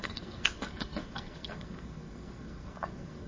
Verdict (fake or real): fake